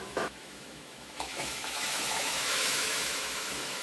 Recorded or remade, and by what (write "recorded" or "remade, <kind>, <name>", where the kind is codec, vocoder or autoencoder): remade, autoencoder, DAC-VAE